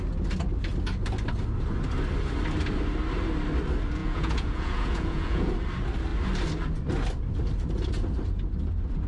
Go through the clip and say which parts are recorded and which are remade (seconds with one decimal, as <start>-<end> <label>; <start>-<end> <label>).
0.0-4.0 recorded; 4.0-5.5 remade; 5.5-9.1 recorded